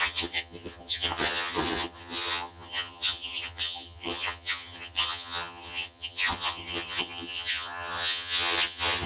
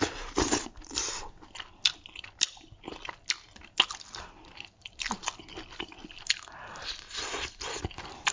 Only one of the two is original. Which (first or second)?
second